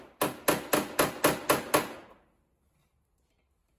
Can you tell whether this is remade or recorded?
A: recorded